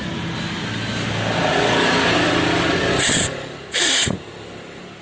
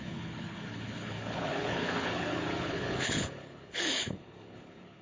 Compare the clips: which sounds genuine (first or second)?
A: first